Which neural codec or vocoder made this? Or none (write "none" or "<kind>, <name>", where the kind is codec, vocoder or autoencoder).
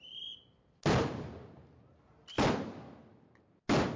none